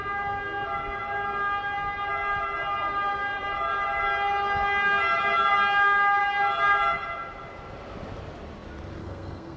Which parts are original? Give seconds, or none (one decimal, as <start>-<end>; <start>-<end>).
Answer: 0.0-9.0